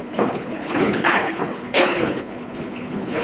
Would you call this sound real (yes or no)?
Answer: no